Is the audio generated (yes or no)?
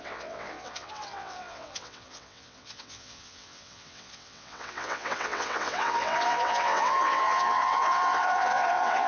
yes